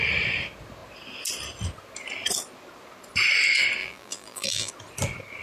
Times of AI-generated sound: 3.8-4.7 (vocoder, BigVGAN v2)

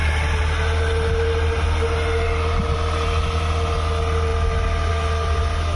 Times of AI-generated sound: none

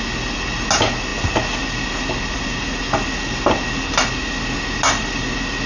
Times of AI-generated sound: none

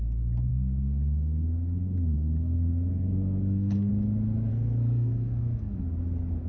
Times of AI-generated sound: 0.5-3.9 (codec, SNAC); 4.5-5.8